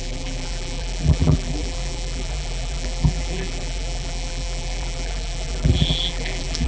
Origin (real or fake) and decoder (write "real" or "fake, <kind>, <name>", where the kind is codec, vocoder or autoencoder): fake, vocoder, BigVGAN v2